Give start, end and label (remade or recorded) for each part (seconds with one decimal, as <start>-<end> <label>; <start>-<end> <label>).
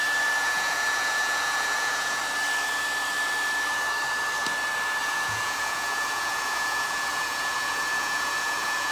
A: 0.0-0.4 recorded; 0.4-2.2 remade; 2.2-5.0 recorded; 5.0-8.9 remade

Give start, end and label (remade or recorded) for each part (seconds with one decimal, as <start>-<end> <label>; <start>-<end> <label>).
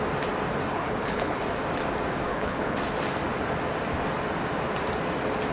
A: 0.0-0.7 recorded; 0.7-1.4 remade; 1.4-2.3 recorded; 2.3-2.8 remade; 2.8-5.5 recorded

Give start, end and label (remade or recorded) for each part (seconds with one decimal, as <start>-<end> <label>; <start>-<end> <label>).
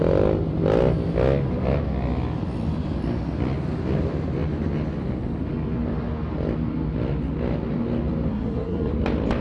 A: 0.0-8.3 recorded; 8.3-8.9 remade; 8.9-9.4 recorded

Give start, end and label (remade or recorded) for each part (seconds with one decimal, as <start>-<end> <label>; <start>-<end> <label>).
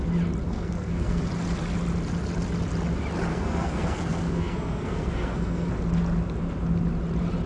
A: 0.0-0.5 recorded; 0.5-1.2 remade; 1.2-3.3 recorded; 3.3-5.7 remade; 5.7-7.5 recorded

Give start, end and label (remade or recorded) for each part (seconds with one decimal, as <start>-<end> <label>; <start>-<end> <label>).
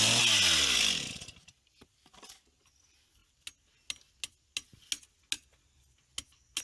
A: 0.0-6.6 recorded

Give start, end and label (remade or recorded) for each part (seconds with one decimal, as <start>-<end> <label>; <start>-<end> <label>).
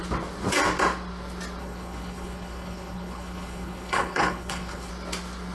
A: 0.0-1.6 recorded; 1.6-4.9 remade; 4.9-5.5 recorded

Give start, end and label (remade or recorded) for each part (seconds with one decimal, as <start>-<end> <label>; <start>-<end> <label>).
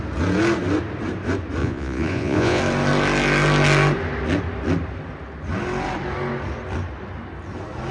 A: 0.0-1.6 recorded; 1.6-2.6 remade; 2.6-7.9 recorded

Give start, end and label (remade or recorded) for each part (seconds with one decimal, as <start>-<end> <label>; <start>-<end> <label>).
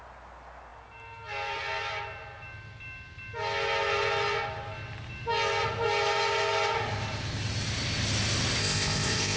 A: 0.0-8.6 recorded; 8.6-9.4 remade